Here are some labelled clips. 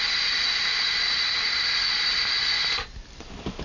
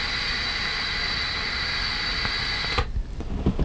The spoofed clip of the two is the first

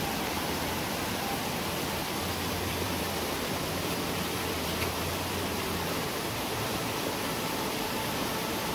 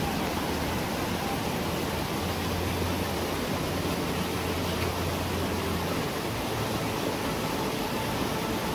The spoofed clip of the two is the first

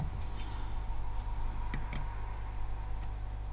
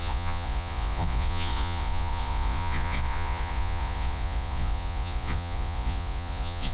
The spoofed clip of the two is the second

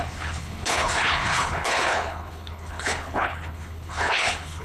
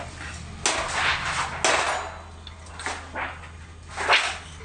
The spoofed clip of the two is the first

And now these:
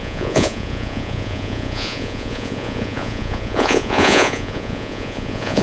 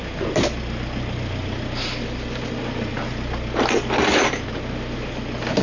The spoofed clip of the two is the first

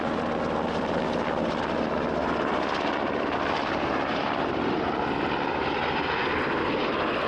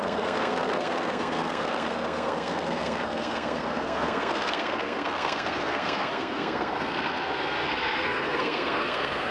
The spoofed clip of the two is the second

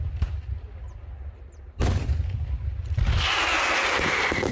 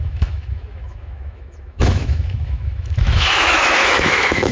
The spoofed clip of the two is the second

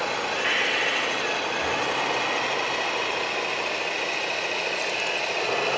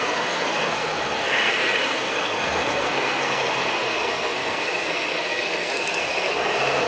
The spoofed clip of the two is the second